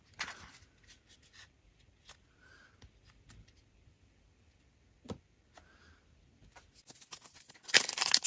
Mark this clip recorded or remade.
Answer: recorded